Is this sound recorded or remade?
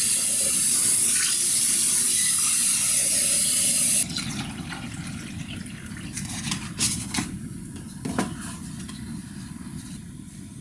recorded